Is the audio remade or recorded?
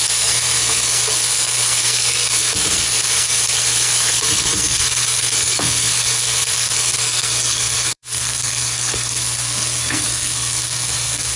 remade